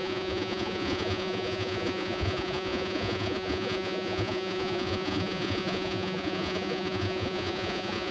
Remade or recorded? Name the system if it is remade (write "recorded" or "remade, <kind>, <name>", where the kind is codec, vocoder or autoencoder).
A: remade, vocoder, Vocos